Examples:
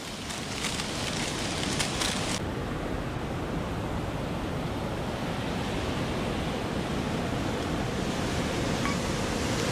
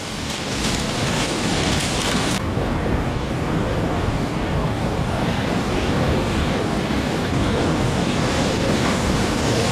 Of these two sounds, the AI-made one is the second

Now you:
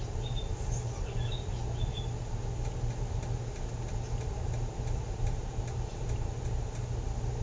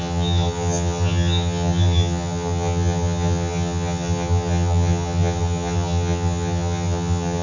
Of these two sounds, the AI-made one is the second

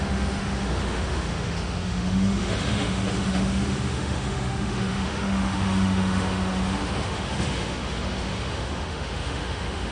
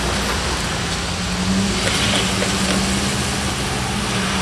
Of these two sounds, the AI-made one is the first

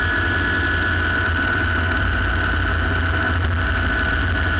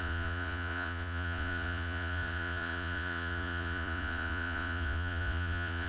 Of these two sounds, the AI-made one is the second